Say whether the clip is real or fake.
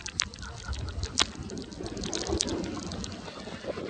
real